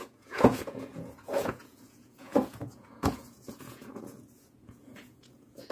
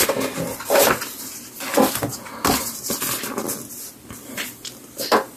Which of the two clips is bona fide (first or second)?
second